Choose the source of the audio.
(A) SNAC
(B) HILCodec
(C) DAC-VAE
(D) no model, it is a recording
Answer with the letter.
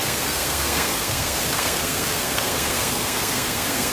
A